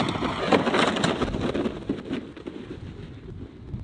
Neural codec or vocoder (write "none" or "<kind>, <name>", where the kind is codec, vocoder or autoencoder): none